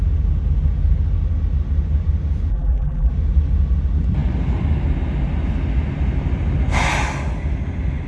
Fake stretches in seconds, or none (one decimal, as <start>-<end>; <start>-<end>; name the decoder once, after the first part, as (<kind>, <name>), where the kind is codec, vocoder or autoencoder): 2.5-3.1 (vocoder, BigVGAN v2)